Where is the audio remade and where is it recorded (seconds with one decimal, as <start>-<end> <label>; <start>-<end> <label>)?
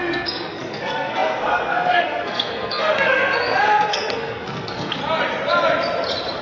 0.0-5.0 remade; 5.0-6.4 recorded